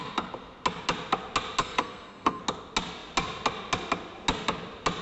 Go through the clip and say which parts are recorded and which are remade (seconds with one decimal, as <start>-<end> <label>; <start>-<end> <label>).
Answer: 0.0-1.6 recorded; 1.6-2.4 remade; 2.4-5.0 recorded